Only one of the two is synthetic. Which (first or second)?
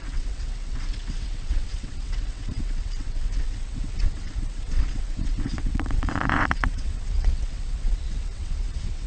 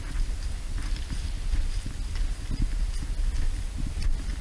first